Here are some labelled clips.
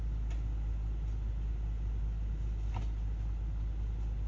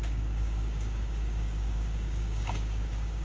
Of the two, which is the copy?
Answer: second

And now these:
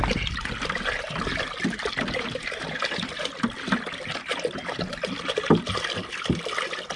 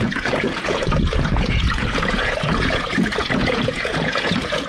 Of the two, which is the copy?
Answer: second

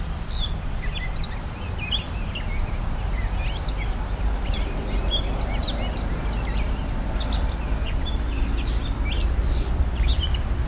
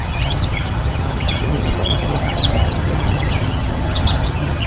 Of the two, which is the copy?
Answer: second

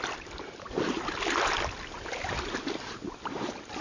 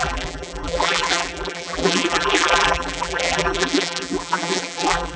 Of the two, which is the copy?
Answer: second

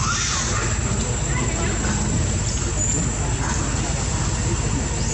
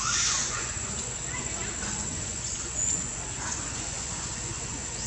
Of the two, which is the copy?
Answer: second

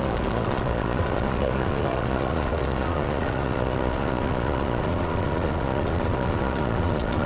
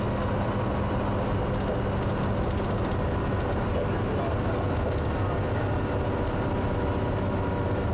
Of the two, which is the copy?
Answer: first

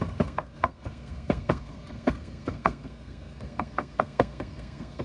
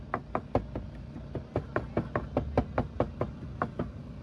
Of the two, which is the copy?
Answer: first